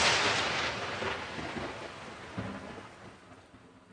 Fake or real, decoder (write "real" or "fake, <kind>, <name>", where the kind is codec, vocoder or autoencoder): real